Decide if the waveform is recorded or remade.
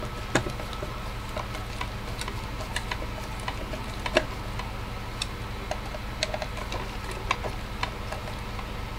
recorded